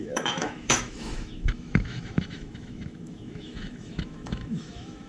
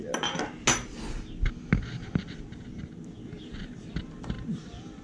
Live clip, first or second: second